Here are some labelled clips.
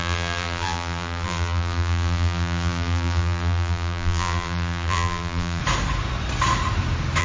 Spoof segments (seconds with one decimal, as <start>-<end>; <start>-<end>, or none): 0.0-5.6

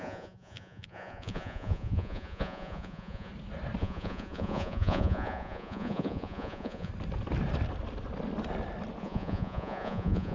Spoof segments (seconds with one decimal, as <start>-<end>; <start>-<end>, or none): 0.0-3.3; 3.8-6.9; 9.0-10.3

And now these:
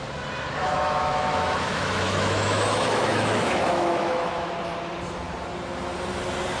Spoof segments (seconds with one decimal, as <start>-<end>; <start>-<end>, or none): 0.6-4.5